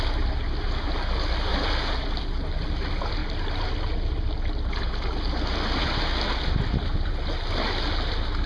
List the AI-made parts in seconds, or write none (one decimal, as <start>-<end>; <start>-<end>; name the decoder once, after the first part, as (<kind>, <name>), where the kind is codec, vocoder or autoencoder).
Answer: none